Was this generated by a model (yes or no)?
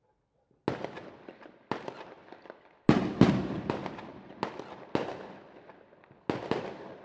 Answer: no